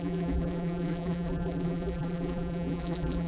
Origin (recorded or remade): remade